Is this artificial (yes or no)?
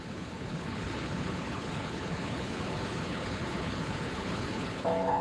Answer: yes